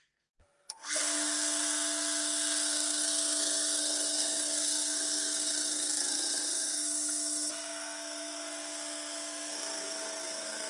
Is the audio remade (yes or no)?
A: yes